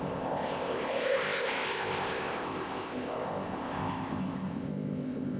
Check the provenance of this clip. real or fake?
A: fake